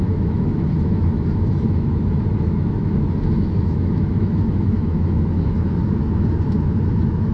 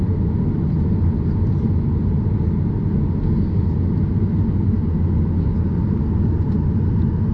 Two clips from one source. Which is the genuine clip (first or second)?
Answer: second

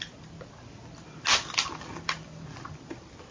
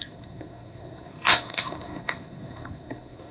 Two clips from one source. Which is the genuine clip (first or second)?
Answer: first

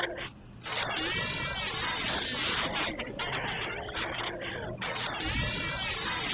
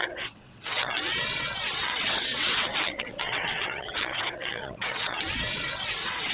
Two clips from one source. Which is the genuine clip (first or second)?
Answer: first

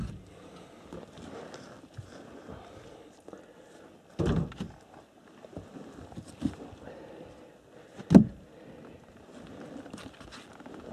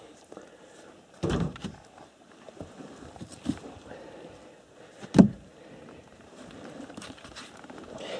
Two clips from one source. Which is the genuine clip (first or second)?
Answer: first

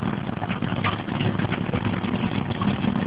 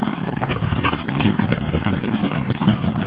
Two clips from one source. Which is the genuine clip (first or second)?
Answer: first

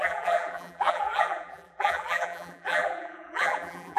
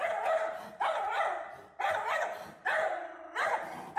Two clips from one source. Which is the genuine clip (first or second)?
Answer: second